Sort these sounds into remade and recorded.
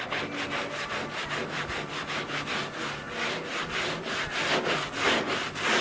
recorded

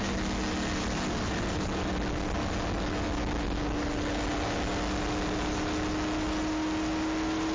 recorded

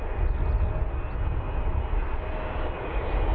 recorded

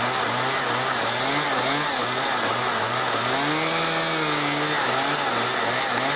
recorded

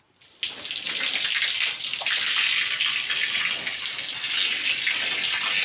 recorded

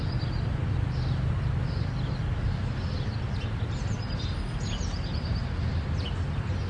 recorded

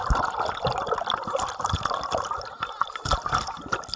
recorded